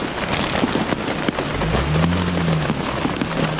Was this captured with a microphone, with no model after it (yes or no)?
yes